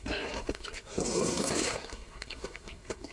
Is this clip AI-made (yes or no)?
yes